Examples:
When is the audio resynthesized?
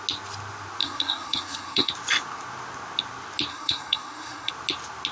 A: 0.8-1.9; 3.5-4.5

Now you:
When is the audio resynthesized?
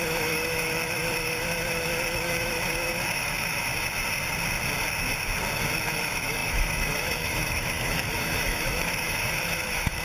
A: 0.0-3.7; 5.8-10.0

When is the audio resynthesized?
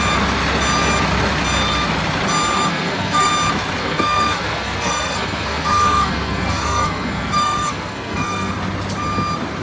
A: 2.7-3.3; 3.8-8.5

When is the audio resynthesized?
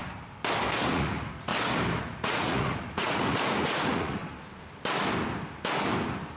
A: 0.9-1.5; 2.0-4.2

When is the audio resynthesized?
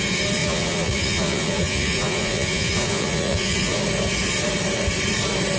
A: 0.4-3.8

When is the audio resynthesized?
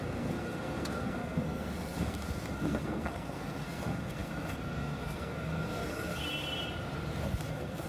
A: 0.0-6.2; 7.5-7.9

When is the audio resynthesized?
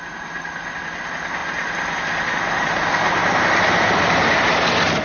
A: none